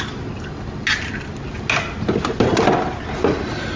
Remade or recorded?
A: recorded